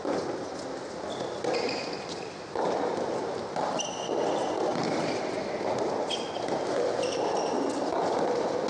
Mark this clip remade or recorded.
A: recorded